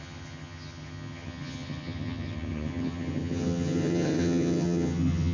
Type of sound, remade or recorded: remade